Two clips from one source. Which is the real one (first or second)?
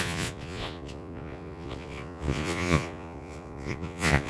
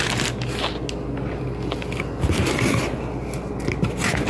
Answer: second